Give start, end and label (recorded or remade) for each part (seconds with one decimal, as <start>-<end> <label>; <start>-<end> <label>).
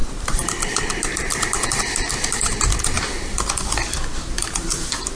0.0-2.7 remade; 2.7-4.4 recorded; 4.4-5.2 remade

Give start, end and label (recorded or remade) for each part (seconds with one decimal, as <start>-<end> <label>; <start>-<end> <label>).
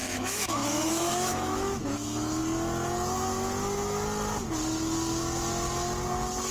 0.0-2.4 remade; 2.4-6.5 recorded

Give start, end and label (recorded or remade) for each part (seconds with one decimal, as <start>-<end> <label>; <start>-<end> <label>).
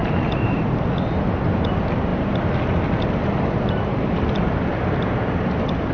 0.0-5.9 recorded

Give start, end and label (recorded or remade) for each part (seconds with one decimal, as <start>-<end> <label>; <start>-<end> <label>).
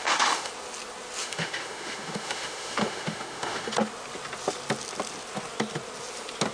0.0-0.5 remade; 0.5-1.2 recorded; 1.2-3.7 remade; 3.7-6.5 recorded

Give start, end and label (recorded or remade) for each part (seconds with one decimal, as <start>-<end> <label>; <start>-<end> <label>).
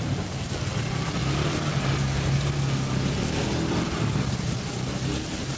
0.0-5.6 recorded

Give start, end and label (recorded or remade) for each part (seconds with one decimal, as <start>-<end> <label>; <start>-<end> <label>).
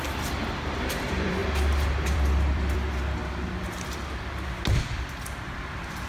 0.0-1.4 remade; 1.4-2.0 recorded; 2.0-3.2 remade; 3.2-4.8 recorded; 4.8-6.1 remade